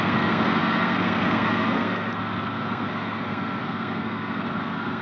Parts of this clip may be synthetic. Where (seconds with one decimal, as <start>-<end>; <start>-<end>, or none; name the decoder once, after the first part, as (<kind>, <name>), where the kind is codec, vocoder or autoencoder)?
0.0-5.0 (codec, SNAC)